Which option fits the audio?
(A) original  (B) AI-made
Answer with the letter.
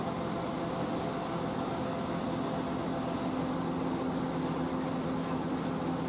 A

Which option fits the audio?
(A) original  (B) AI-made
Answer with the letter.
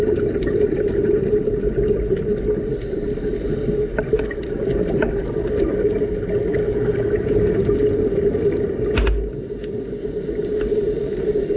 A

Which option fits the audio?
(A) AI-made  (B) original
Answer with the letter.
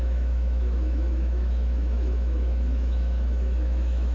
A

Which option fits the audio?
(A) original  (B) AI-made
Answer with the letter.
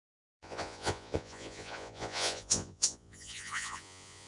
B